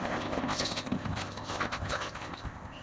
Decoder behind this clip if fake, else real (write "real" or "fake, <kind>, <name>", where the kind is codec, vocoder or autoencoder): fake, codec, ZipCodec